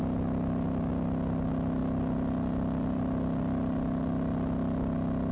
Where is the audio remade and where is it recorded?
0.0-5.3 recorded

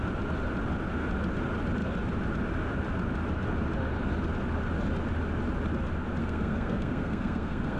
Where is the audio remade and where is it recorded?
0.0-6.2 recorded; 6.2-7.8 remade

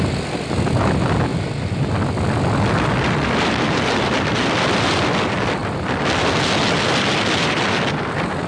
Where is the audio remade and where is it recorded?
0.0-5.6 remade; 5.6-6.2 recorded; 6.2-8.5 remade